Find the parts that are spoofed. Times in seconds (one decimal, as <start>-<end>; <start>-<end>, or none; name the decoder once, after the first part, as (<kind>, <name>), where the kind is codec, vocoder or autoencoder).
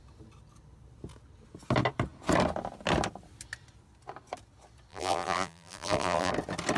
4.9-6.3 (vocoder, BigVGAN v2)